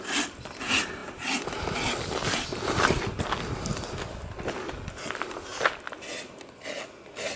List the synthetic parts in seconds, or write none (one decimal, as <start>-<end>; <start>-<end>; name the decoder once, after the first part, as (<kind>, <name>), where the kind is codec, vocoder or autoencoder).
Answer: none